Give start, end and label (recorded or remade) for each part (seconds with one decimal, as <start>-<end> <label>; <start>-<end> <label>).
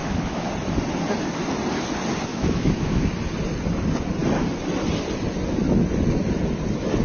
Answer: 0.0-0.5 remade; 0.5-2.3 recorded; 2.3-3.1 remade; 3.1-7.0 recorded